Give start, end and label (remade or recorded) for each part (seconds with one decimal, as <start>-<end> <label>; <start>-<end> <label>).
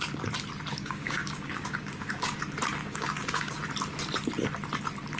0.0-0.7 recorded; 0.7-2.4 remade; 2.4-2.8 recorded; 2.8-3.6 remade; 3.6-5.2 recorded